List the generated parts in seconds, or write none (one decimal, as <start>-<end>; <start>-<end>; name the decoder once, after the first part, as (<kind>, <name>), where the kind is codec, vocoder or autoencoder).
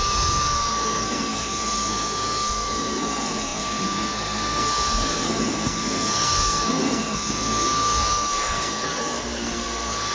0.0-10.1 (codec, SNAC)